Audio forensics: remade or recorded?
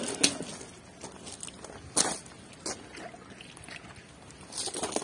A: recorded